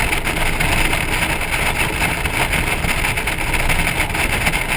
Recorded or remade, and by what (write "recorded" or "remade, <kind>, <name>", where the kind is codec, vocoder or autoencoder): recorded